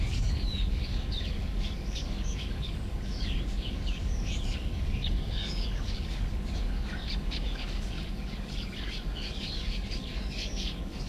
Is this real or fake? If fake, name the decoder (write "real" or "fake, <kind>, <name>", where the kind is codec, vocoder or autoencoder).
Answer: fake, codec, DAC